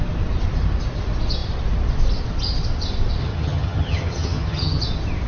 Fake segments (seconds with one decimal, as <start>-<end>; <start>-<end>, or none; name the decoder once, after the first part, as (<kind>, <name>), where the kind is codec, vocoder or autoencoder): 3.2-4.8 (vocoder, HiFi-GAN)